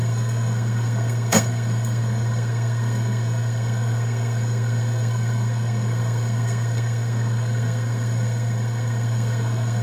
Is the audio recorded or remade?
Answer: remade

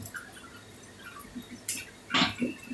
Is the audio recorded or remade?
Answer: recorded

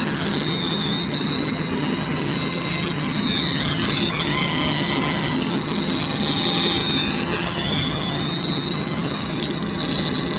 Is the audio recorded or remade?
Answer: remade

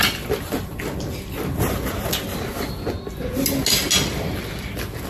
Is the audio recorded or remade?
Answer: recorded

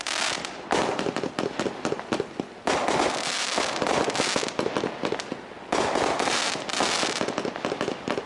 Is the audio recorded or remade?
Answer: recorded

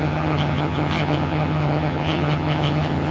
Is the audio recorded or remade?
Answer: remade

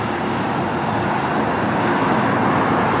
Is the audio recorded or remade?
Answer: recorded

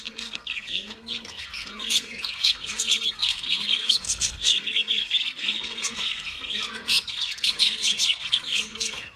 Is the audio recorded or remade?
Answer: remade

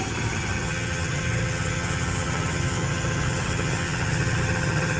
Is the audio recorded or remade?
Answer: remade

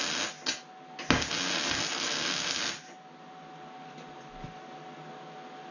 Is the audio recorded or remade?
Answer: recorded